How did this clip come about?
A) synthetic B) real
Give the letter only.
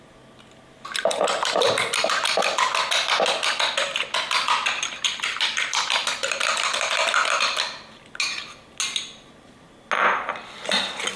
B